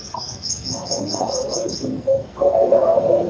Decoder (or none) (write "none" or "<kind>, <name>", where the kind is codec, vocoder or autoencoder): codec, SNAC